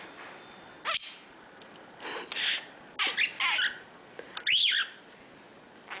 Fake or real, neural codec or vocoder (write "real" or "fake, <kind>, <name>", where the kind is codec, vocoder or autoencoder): real